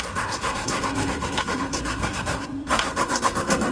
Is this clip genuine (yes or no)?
no